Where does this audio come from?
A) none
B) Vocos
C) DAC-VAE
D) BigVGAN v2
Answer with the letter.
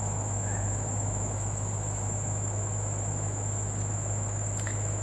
C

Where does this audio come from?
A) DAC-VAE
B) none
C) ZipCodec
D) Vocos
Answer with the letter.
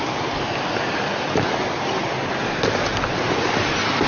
B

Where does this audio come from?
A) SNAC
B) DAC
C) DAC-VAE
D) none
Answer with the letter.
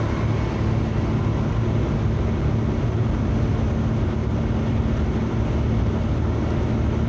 D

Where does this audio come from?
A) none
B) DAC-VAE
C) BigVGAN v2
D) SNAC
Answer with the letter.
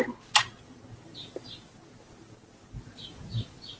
A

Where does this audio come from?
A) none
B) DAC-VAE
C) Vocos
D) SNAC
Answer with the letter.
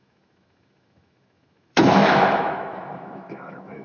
B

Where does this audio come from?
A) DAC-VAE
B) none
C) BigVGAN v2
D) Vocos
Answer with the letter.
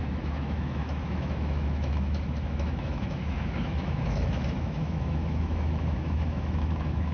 A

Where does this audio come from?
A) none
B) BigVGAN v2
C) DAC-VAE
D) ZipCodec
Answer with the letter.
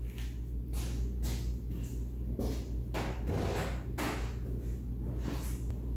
A